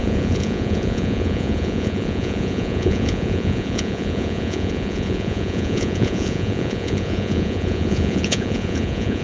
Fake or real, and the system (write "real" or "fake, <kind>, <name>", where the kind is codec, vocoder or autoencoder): fake, vocoder, Vocos